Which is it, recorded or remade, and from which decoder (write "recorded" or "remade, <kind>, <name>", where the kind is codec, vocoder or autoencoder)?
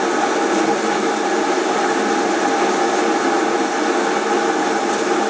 recorded